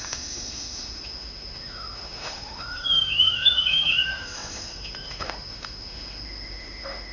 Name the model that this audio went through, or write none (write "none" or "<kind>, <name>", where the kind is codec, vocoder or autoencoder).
autoencoder, DAC-VAE